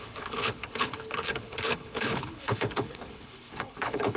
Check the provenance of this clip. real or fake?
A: fake